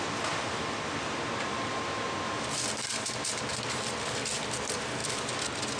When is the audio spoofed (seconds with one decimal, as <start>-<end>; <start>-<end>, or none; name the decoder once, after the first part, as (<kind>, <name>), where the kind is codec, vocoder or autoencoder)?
none